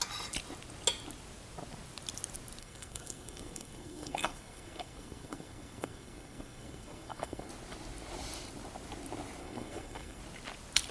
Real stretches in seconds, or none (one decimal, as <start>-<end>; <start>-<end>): 0.0-2.6; 7.5-9.4; 10.2-10.9